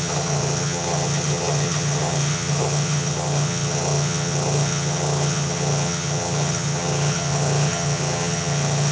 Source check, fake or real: fake